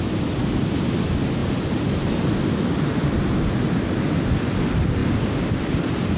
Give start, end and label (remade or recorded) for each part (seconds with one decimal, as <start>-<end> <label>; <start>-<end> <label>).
0.0-6.2 recorded